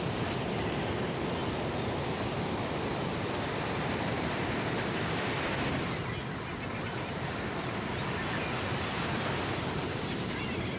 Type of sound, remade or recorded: recorded